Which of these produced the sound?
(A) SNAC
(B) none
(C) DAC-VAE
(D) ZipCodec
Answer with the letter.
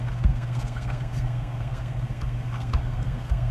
A